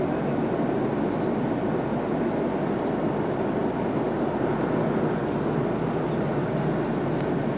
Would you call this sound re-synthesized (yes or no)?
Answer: no